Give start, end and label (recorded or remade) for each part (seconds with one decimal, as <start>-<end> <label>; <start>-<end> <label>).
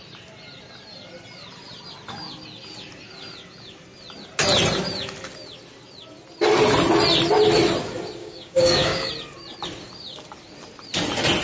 0.0-8.2 recorded; 8.2-9.1 remade; 9.1-11.4 recorded